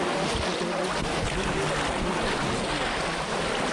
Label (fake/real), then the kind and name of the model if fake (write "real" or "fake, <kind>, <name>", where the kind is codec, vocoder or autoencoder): real